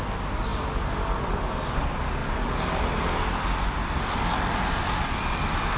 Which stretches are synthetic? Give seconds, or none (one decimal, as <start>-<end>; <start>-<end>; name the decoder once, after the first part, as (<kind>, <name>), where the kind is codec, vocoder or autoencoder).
none